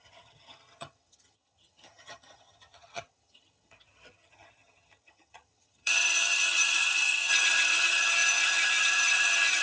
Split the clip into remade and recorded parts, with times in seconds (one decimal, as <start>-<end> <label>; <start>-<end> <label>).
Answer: 0.0-9.6 remade